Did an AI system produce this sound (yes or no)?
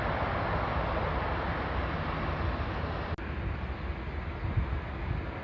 no